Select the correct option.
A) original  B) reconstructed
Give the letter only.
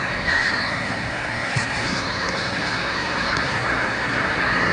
B